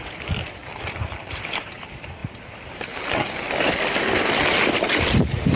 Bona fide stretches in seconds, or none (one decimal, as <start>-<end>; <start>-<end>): 0.0-0.6; 1.7-5.6